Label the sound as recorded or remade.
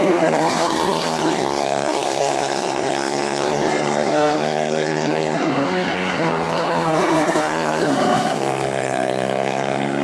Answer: remade